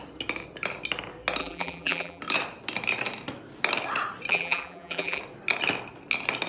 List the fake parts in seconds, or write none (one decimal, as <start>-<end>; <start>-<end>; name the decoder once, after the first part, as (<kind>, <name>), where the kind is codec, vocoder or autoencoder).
1.4-2.2 (vocoder, BigVGAN v2); 4.3-5.2

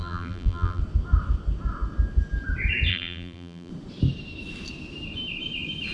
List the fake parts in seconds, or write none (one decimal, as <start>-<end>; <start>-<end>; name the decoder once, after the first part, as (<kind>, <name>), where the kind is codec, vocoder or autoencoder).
0.0-0.8 (vocoder, BigVGAN v2); 2.9-3.7

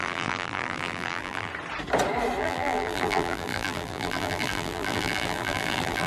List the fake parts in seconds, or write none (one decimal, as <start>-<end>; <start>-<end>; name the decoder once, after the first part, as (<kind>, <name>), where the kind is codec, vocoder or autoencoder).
0.0-1.5 (vocoder, BigVGAN v2); 2.4-6.1

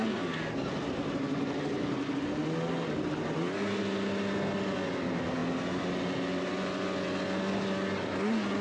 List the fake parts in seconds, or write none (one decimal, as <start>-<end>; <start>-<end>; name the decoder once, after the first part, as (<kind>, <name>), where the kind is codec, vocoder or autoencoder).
none

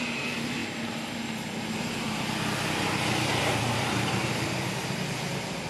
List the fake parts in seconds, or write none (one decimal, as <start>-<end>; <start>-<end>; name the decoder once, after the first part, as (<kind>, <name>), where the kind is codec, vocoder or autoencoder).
0.0-0.6 (vocoder, BigVGAN v2); 3.4-5.7

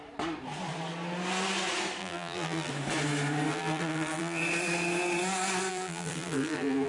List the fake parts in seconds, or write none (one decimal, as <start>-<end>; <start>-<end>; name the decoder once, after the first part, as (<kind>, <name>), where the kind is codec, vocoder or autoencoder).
2.0-2.7 (vocoder, BigVGAN v2); 3.5-4.4; 5.7-6.9